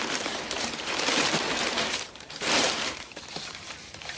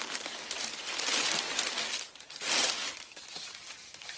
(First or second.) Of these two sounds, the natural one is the second